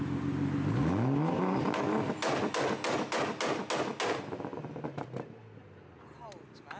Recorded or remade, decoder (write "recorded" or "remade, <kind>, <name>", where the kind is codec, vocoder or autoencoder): recorded